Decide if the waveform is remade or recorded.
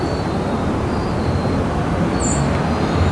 recorded